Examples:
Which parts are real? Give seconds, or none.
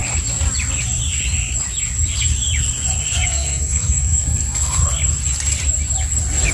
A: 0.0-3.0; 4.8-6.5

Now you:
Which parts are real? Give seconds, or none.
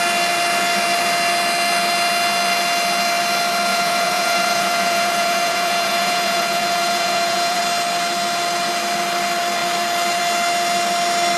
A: 0.0-3.7; 7.6-11.4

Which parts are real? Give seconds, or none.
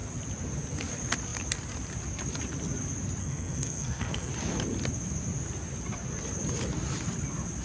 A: 0.0-3.2; 4.3-7.6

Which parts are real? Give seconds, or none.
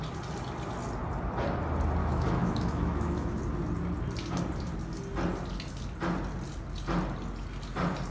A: 0.0-2.0; 3.4-8.1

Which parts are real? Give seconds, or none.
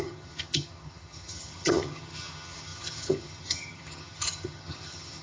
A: none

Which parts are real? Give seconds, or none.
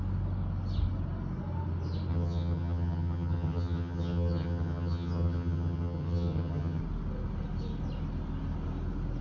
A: 0.0-2.1; 6.8-9.2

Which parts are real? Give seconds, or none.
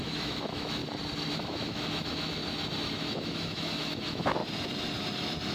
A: 0.8-1.3; 2.4-3.0; 4.4-5.5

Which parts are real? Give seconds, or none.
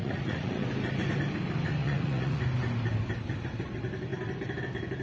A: 0.6-1.8; 2.4-5.0